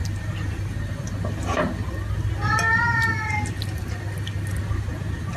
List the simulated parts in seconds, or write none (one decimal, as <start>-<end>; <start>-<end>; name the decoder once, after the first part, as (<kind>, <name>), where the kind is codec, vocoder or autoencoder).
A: none